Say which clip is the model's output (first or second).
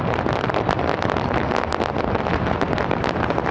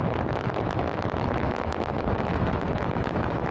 second